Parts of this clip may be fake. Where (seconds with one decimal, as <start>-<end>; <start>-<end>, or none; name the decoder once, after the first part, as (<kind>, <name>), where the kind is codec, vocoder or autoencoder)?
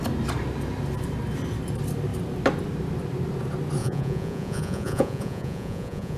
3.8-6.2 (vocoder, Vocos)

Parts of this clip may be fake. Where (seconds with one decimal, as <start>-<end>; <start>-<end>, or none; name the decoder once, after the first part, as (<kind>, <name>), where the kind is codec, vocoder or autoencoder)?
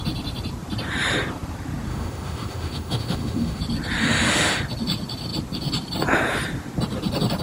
1.9-3.6 (autoencoder, DAC-VAE); 4.0-4.6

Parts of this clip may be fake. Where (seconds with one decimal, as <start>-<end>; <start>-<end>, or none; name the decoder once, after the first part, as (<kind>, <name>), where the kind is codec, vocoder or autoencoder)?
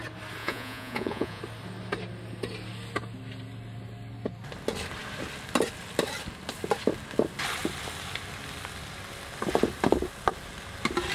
0.4-1.4 (vocoder, Vocos)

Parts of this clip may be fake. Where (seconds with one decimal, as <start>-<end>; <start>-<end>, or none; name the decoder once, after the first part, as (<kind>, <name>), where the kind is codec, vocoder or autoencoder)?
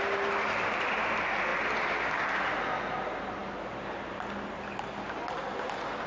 none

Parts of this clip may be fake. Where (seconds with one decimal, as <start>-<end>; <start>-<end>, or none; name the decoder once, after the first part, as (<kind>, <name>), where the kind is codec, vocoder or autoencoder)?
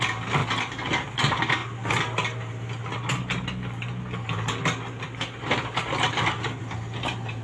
none